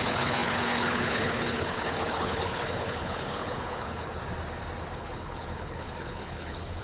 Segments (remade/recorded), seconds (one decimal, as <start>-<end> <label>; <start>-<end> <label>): 0.0-4.2 remade; 4.2-4.9 recorded; 4.9-6.8 remade